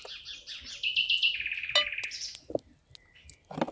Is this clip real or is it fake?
real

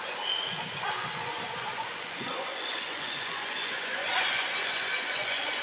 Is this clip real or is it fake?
fake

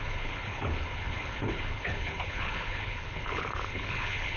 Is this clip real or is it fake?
fake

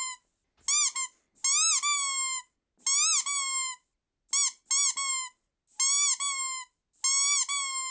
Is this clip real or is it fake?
real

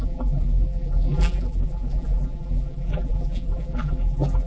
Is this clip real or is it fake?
fake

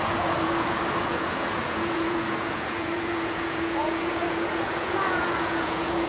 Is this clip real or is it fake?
fake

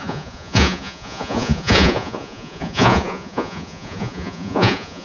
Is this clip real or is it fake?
fake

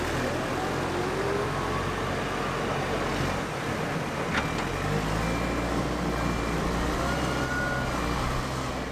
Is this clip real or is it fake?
real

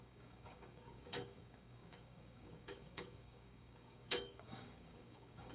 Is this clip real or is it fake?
fake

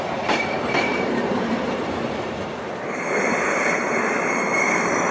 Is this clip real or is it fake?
fake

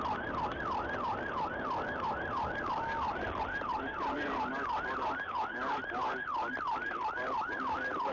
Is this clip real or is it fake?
real